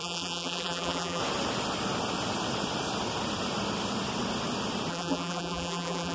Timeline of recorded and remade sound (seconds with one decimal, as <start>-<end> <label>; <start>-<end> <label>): 0.0-1.2 remade; 1.2-4.9 recorded; 4.9-6.1 remade

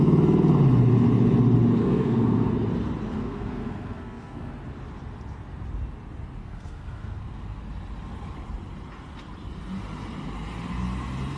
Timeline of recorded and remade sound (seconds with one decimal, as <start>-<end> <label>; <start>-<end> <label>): 0.0-1.8 recorded; 1.8-2.5 remade; 2.5-3.1 recorded; 3.1-4.5 remade; 4.5-6.4 recorded; 6.4-7.6 remade; 7.6-11.4 recorded

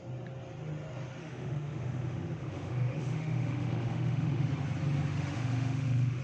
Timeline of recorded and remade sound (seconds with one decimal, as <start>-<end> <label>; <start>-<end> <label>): 0.0-1.2 recorded; 1.2-4.5 remade; 4.5-5.1 recorded; 5.1-6.2 remade

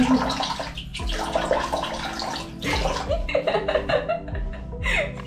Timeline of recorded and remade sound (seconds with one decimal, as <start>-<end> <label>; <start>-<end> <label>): 0.0-5.3 recorded

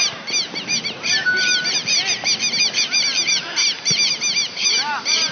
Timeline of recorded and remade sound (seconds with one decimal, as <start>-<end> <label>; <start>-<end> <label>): 0.0-1.8 remade; 1.8-2.6 recorded; 2.6-3.1 remade; 3.1-4.1 recorded; 4.1-5.3 remade

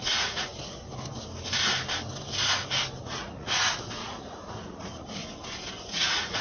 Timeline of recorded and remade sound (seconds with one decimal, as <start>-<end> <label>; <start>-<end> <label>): 0.0-0.5 remade; 0.5-3.0 recorded; 3.0-5.2 remade; 5.2-5.9 recorded; 5.9-6.4 remade